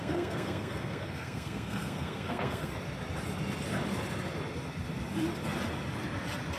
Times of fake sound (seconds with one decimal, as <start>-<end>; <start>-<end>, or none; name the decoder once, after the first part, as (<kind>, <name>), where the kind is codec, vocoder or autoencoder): 0.0-2.7 (codec, SNAC)